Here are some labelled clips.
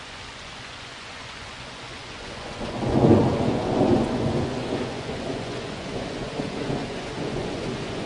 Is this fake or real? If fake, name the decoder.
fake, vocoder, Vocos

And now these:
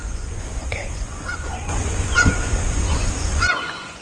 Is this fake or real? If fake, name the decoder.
fake, vocoder, Vocos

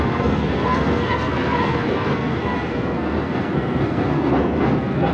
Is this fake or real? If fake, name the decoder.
fake, codec, SNAC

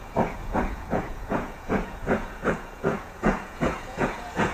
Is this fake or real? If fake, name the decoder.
fake, vocoder, Vocos